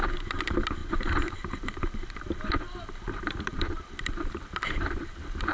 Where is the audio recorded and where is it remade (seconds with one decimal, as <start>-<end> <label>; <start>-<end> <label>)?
0.0-0.8 recorded; 0.8-4.1 remade; 4.1-5.5 recorded